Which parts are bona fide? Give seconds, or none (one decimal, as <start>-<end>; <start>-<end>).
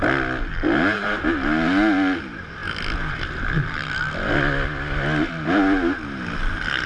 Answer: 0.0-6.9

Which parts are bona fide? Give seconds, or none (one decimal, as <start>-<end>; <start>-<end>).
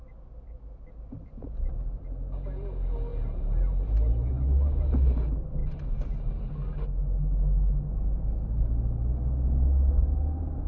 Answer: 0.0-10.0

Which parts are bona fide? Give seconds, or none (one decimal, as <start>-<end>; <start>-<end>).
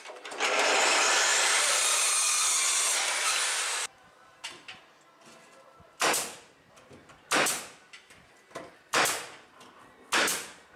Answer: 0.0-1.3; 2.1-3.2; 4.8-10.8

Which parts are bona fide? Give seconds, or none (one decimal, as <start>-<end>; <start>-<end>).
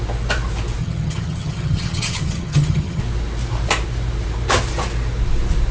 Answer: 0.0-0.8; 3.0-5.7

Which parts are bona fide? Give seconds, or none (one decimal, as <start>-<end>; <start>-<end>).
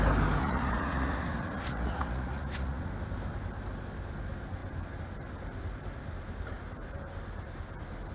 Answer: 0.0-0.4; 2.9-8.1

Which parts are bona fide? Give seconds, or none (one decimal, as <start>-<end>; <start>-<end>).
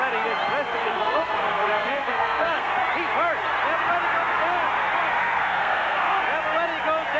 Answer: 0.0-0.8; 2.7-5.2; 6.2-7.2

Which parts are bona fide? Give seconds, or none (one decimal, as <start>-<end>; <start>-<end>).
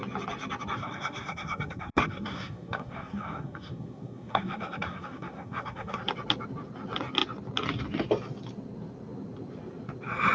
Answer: 0.0-0.8; 6.0-10.3